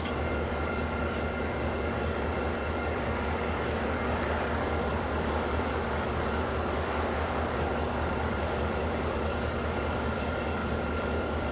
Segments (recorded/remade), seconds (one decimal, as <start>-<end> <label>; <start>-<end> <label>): 0.0-11.5 remade